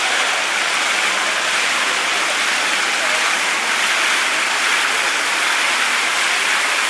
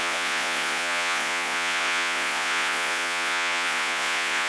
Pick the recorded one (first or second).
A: first